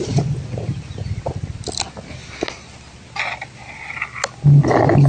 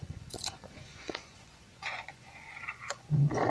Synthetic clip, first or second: second